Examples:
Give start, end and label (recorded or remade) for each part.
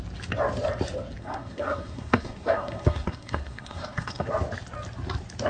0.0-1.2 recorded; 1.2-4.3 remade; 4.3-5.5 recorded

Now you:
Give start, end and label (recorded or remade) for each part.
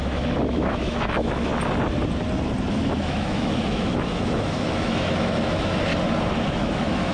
0.0-1.5 remade; 1.5-2.7 recorded; 2.7-5.9 remade; 5.9-6.5 recorded; 6.5-7.1 remade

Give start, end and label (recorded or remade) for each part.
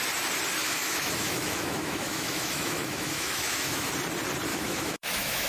0.0-0.6 recorded; 0.6-3.9 remade; 3.9-4.5 recorded; 4.5-5.5 remade